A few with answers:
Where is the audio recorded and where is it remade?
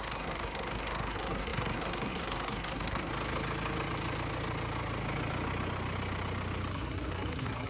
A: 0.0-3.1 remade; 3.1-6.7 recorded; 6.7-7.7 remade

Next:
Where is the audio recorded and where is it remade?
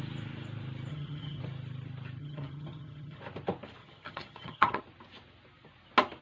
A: 0.0-0.9 recorded; 0.9-1.4 remade; 1.4-2.2 recorded; 2.2-3.2 remade; 3.2-3.8 recorded; 3.8-4.8 remade; 4.8-6.2 recorded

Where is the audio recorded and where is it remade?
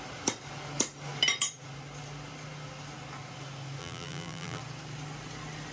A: 0.0-3.8 recorded; 3.8-4.6 remade; 4.6-5.7 recorded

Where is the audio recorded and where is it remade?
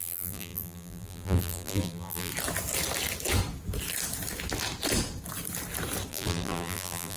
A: 0.0-2.3 remade; 2.3-6.1 recorded; 6.1-7.2 remade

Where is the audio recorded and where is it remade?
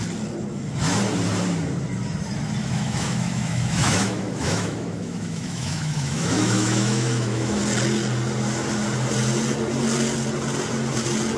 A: 0.0-2.6 recorded; 2.6-7.6 remade; 7.6-11.4 recorded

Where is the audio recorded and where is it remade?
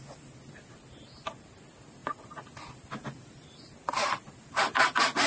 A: 0.0-5.3 recorded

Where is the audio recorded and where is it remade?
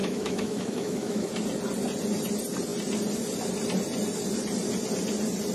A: 0.0-1.3 remade; 1.3-5.5 recorded